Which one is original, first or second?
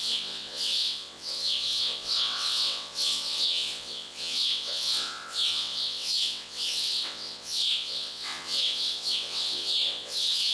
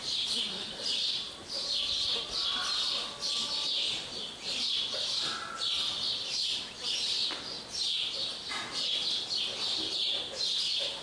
second